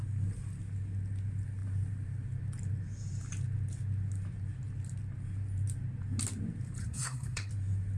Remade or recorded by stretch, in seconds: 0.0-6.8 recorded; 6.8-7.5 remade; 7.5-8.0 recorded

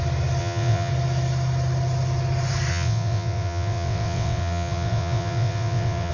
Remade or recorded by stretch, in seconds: 0.0-0.4 recorded; 0.4-0.9 remade; 0.9-2.7 recorded; 2.7-6.1 remade

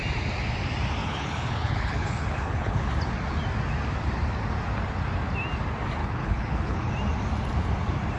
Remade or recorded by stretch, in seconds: 0.0-1.0 recorded; 1.0-2.9 remade; 2.9-6.0 recorded; 6.0-6.9 remade; 6.9-8.2 recorded

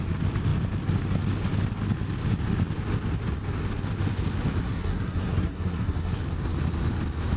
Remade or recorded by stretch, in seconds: 0.0-4.6 recorded; 4.6-6.2 remade; 6.2-7.4 recorded